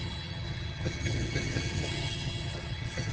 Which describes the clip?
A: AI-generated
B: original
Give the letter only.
A